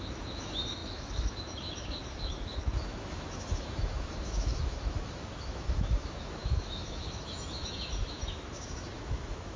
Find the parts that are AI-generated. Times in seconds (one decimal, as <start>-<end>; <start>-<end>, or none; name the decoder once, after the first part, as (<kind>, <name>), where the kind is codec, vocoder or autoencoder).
0.0-9.6 (autoencoder, DAC-VAE)